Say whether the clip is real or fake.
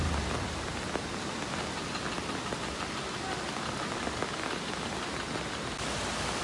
real